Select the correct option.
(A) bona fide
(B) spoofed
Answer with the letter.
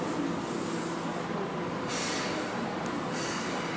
A